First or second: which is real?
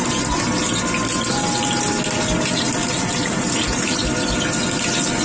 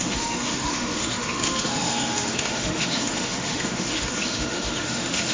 first